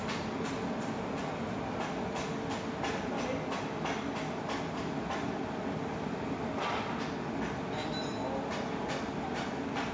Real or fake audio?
real